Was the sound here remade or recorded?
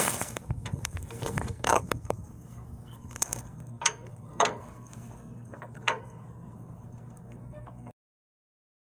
remade